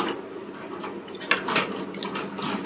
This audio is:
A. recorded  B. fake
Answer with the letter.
A